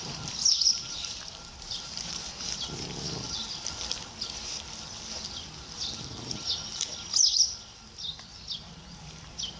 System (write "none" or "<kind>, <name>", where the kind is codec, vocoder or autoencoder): none